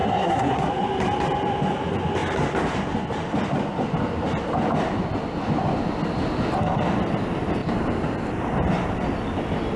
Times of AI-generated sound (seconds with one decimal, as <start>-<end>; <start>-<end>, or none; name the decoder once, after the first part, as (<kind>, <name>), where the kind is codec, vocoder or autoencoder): 0.0-0.7 (codec, SNAC)